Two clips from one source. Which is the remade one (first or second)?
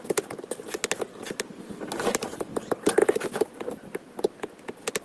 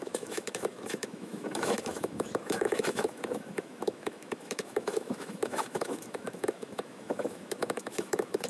second